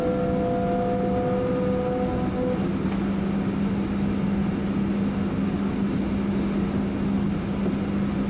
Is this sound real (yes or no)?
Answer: yes